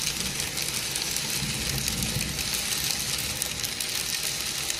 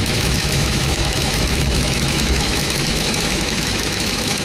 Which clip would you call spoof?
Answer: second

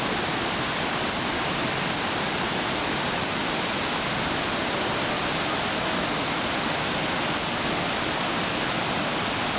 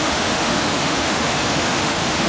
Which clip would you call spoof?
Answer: second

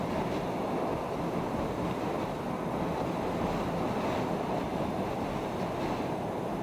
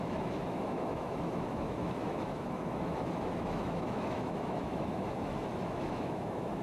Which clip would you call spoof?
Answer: second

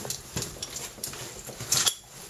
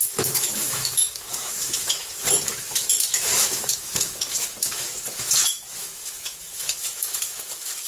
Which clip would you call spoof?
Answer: second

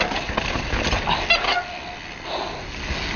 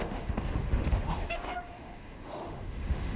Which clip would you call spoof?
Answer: second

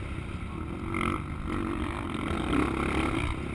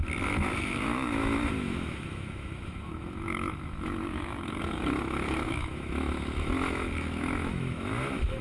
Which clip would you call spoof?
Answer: second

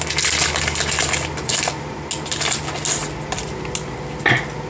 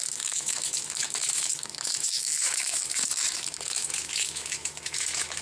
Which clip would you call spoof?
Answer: second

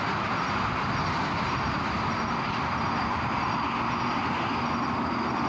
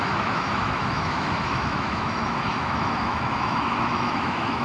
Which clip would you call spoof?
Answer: second